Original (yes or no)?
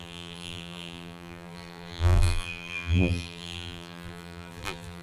no